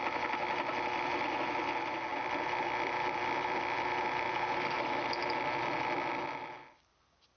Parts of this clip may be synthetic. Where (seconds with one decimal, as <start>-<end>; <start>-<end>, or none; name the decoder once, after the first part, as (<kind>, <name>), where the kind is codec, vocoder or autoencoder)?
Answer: 2.1-5.2 (vocoder, BigVGAN v2)